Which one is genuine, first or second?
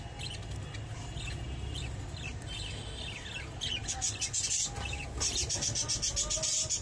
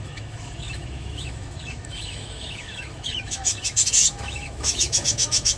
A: first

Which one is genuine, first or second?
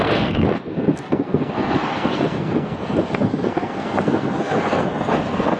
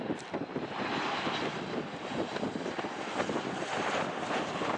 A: second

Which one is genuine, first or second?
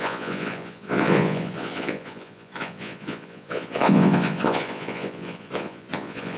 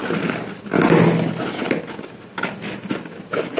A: second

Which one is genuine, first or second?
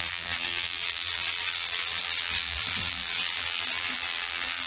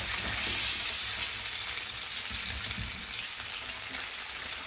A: second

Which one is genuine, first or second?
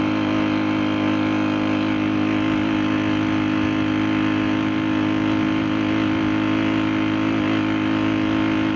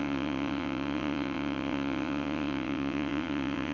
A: first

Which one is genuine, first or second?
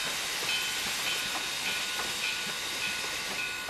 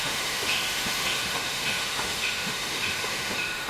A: first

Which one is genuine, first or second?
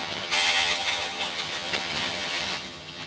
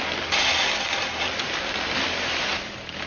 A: second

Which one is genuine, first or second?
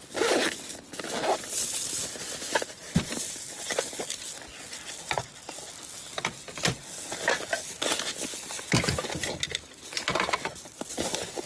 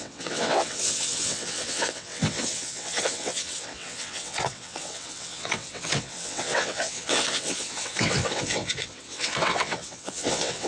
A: first